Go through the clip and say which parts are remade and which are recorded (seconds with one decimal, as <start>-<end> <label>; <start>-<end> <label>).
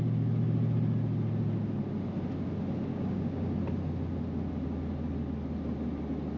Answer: 0.0-2.9 recorded; 2.9-3.5 remade; 3.5-6.4 recorded